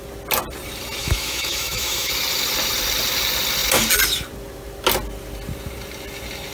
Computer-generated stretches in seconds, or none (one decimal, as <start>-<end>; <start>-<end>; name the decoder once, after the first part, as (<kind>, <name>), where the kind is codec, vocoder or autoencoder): 1.0-2.1 (autoencoder, DAC-VAE)